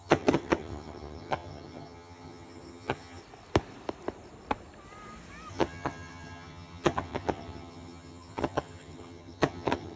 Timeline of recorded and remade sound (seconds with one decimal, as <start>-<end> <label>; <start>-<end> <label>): 0.0-3.2 remade; 3.2-5.5 recorded; 5.5-10.0 remade